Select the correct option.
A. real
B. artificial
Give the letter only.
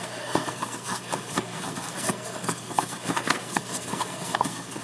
B